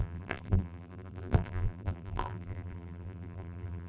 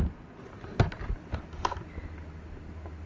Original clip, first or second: second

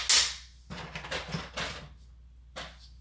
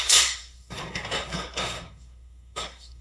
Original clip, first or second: first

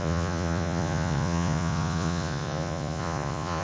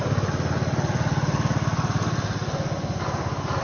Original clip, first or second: second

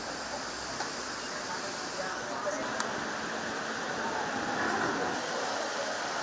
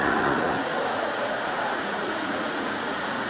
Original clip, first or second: first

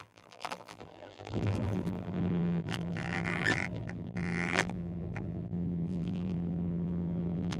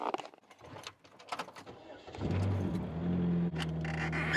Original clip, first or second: second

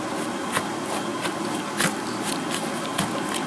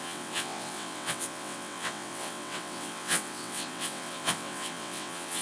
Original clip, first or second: first